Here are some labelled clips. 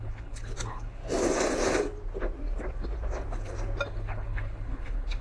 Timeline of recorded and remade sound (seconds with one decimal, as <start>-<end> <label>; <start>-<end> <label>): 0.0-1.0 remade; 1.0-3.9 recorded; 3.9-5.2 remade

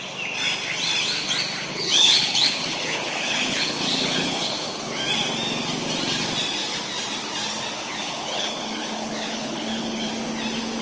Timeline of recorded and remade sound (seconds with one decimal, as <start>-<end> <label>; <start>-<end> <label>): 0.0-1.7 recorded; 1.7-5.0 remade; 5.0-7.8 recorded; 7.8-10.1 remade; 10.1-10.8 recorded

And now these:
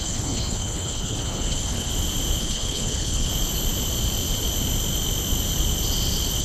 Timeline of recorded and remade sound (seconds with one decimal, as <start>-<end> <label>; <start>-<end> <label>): 0.0-1.9 remade; 1.9-2.4 recorded; 2.4-3.3 remade; 3.3-6.4 recorded

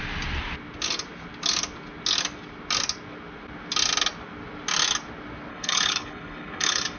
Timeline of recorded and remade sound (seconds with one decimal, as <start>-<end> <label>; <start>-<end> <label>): 0.0-5.5 recorded; 5.5-7.0 remade

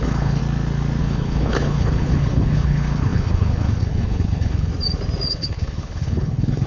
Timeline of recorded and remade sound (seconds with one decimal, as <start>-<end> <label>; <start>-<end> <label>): 0.0-0.4 remade; 0.4-1.0 recorded; 1.0-4.7 remade; 4.7-5.3 recorded; 5.3-6.7 remade

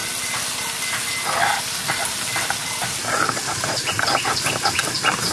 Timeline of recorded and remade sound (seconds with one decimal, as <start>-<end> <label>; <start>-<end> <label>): 0.0-5.3 recorded

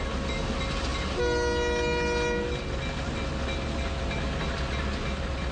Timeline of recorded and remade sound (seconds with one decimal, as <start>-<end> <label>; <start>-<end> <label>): 0.0-5.5 recorded

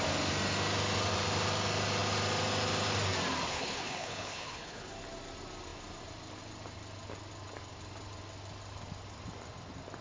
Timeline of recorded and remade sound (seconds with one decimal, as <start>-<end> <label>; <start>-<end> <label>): 0.0-3.5 recorded; 3.5-4.9 remade; 4.9-10.0 recorded